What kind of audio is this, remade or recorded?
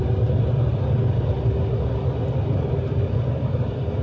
recorded